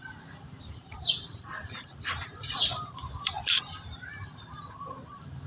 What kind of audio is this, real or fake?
fake